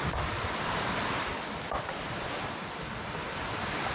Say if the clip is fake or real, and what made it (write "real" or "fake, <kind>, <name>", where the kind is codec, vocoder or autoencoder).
real